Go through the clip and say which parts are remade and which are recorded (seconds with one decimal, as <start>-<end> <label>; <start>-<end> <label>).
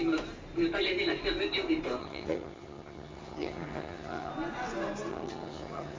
0.0-2.0 recorded; 2.0-4.3 remade; 4.3-5.1 recorded; 5.1-6.0 remade